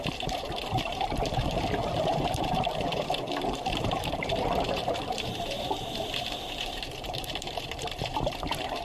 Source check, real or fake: fake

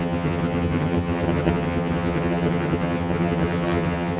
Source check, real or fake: fake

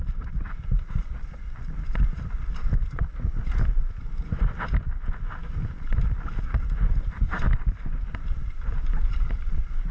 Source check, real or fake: fake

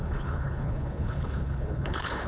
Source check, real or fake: fake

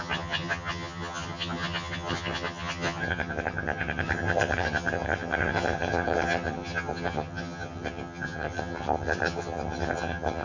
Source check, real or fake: fake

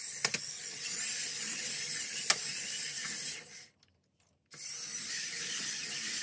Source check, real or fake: real